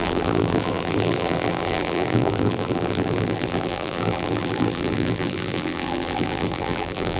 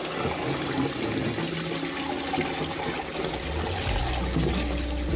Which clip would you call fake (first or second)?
first